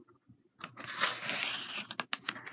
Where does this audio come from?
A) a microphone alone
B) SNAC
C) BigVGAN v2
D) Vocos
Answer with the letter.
A